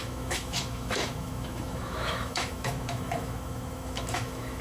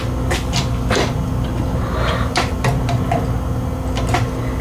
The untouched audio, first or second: second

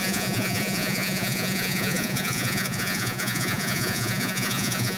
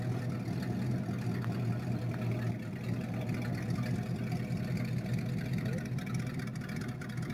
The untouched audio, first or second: second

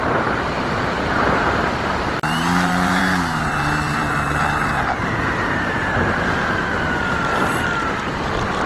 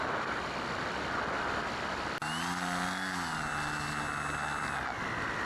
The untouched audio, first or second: second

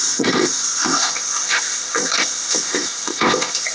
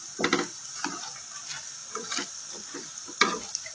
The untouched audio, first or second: second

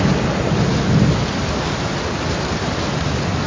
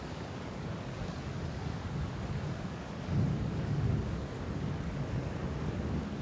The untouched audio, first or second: first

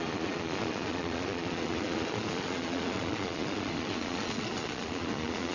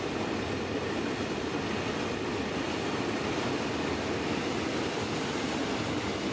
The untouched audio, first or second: second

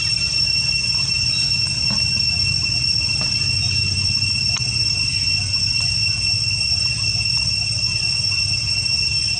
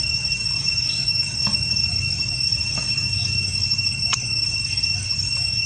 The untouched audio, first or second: first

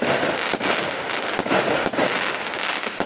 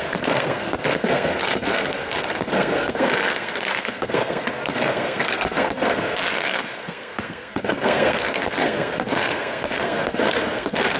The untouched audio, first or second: first